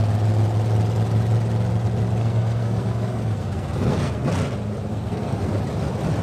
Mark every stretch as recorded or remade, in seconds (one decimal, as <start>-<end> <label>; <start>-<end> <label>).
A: 0.0-2.2 recorded; 2.2-4.3 remade; 4.3-4.9 recorded; 4.9-5.5 remade; 5.5-6.2 recorded